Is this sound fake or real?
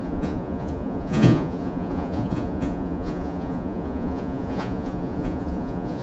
fake